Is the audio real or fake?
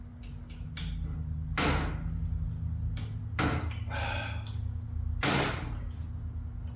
real